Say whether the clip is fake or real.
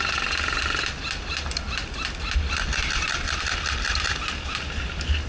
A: real